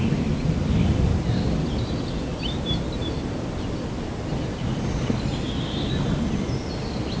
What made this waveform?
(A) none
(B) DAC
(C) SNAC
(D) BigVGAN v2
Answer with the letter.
A